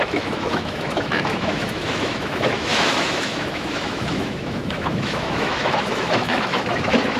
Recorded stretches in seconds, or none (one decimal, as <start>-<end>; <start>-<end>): none